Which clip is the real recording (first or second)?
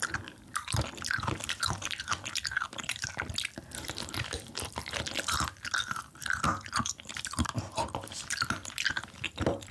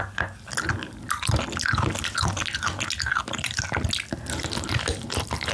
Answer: second